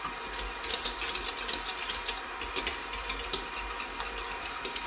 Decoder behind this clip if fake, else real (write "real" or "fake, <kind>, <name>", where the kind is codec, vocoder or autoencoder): real